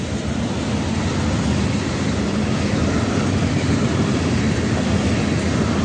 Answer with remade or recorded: recorded